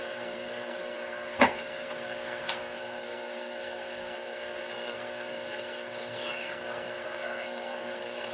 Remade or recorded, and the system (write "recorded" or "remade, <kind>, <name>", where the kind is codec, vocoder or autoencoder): remade, codec, SNAC